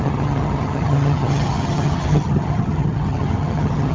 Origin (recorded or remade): remade